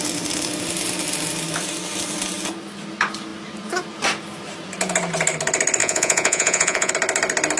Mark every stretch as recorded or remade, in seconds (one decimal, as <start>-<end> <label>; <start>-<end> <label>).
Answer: 0.0-5.8 recorded; 5.8-6.9 remade; 6.9-7.6 recorded